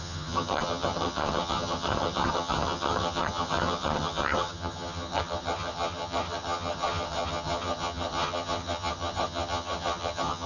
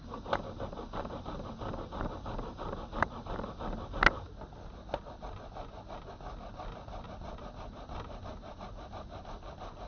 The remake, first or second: first